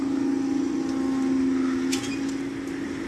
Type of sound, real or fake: real